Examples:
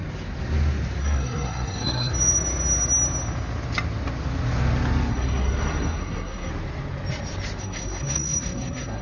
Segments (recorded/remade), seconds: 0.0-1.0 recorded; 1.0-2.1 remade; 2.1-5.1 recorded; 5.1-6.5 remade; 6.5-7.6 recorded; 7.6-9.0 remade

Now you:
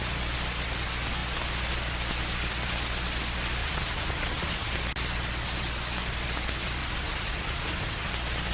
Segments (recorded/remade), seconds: 0.0-3.6 recorded; 3.6-4.7 remade; 4.7-6.8 recorded; 6.8-8.1 remade; 8.1-8.5 recorded

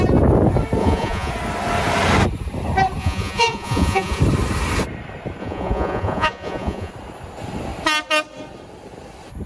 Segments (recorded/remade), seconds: 0.0-0.8 recorded; 0.8-1.3 remade; 1.3-3.0 recorded; 3.0-4.2 remade; 4.2-5.4 recorded; 5.4-6.9 remade; 6.9-9.5 recorded

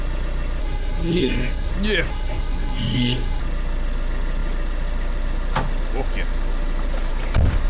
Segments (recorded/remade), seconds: 0.0-0.6 recorded; 0.6-1.7 remade; 1.7-2.1 recorded; 2.1-3.4 remade; 3.4-7.7 recorded

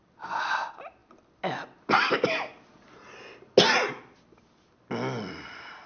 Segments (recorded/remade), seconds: 0.0-5.9 recorded

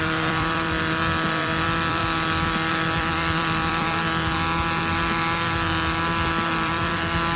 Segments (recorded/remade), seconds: 0.0-2.0 remade; 2.0-2.7 recorded; 2.7-4.0 remade; 4.0-6.3 recorded; 6.3-7.4 remade

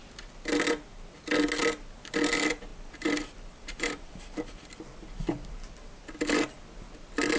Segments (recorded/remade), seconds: 0.0-2.7 recorded; 2.7-4.7 remade; 4.7-7.4 recorded